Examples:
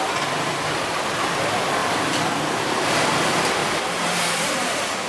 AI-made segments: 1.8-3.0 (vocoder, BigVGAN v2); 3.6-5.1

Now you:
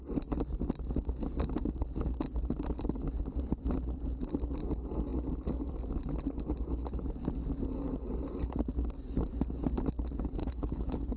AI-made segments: 10.4-11.2 (codec, HILCodec)

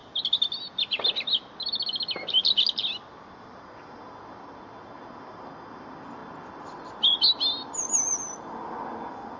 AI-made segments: none

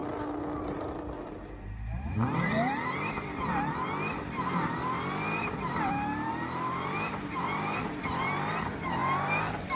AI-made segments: 0.6-9.8 (vocoder, BigVGAN v2)